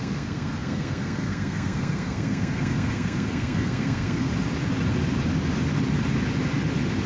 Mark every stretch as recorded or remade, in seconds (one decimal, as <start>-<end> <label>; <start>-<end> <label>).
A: 0.0-4.3 remade; 4.3-7.1 recorded